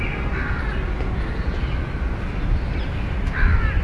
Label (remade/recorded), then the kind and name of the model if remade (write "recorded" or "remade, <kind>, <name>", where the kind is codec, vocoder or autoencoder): recorded